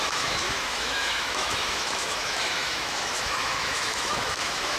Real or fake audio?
fake